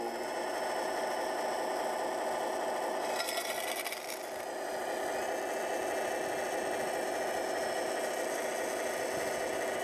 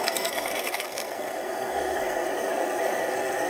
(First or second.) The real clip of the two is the first